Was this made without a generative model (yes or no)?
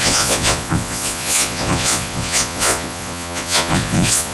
no